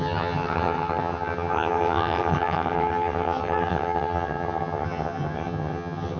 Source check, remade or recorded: remade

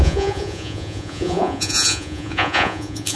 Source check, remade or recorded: remade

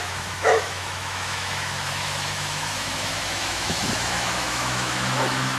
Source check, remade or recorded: remade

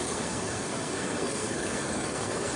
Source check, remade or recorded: remade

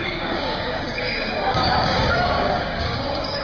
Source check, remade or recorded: remade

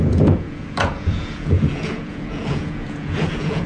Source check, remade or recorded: remade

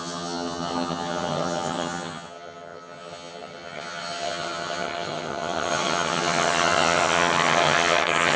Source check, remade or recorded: remade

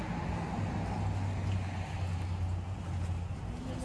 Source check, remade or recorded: recorded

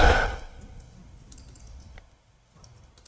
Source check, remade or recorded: recorded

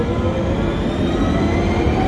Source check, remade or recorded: recorded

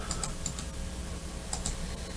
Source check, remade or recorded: recorded